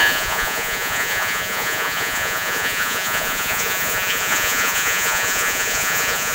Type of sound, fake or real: fake